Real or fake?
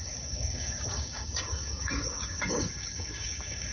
fake